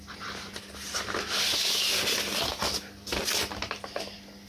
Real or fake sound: real